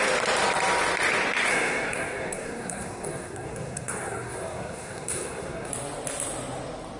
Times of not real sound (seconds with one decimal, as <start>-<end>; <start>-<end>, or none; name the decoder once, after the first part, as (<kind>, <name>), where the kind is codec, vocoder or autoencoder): 1.5-5.7 (codec, SNAC)